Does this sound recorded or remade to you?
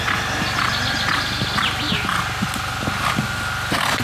recorded